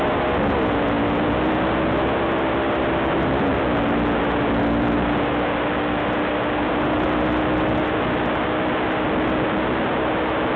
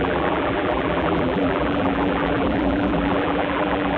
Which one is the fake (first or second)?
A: second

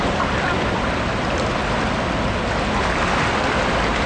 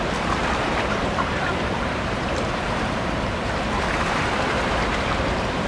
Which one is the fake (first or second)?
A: second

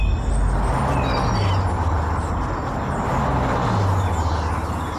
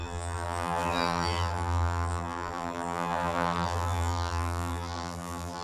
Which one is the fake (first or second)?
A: second